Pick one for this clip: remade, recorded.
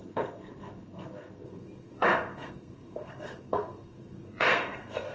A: remade